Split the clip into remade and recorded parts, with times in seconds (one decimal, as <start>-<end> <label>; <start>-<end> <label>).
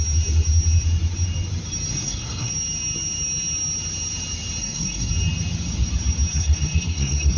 0.0-1.9 recorded; 1.9-2.5 remade; 2.5-4.6 recorded; 4.6-5.1 remade; 5.1-6.3 recorded; 6.3-7.4 remade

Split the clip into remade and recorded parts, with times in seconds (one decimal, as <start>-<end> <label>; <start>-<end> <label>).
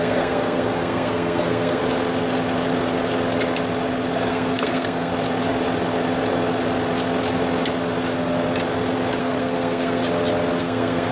0.0-1.8 remade; 1.8-4.3 recorded; 4.3-5.1 remade; 5.1-9.2 recorded; 9.2-10.0 remade; 10.0-10.6 recorded; 10.6-11.1 remade